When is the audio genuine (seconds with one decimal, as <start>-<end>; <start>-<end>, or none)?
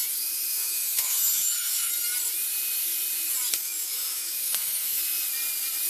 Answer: 0.0-0.5; 1.9-3.6; 5.0-5.9